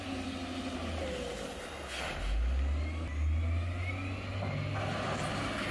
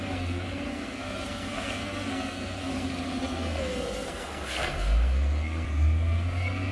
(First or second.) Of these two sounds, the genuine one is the first